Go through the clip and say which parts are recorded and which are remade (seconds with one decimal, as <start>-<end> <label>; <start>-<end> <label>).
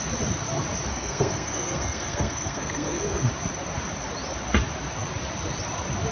0.0-0.9 recorded; 0.9-3.3 remade; 3.3-6.1 recorded